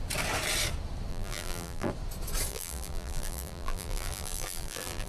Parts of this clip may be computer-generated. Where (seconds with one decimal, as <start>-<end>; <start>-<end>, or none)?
1.1-1.9; 2.5-5.1